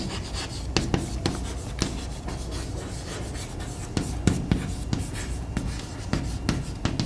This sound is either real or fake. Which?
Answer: real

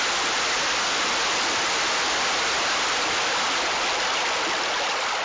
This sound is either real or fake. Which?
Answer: real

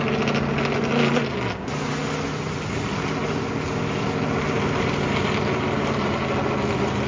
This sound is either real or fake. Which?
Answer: real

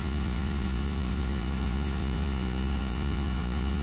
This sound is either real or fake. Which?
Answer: fake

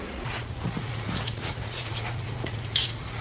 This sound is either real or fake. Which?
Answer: fake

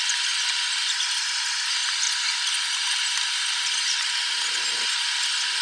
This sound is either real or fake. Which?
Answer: real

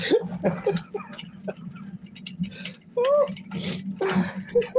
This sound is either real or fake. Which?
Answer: real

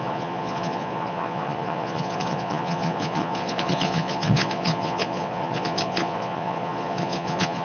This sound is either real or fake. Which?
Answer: fake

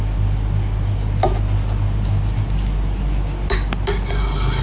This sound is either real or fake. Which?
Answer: real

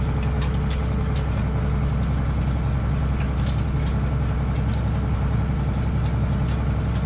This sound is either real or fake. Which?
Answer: real